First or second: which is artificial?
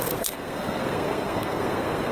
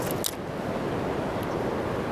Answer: first